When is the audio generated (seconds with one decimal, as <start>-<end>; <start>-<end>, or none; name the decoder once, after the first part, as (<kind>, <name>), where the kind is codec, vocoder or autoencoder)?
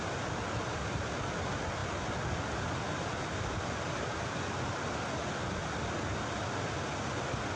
none